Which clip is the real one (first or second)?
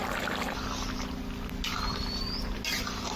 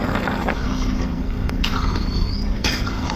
first